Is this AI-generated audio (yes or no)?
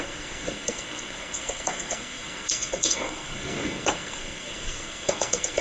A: yes